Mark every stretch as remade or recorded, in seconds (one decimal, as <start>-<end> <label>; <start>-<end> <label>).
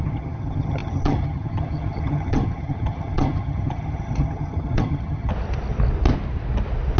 0.0-5.3 remade; 5.3-7.0 recorded